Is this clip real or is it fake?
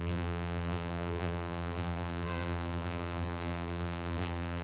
fake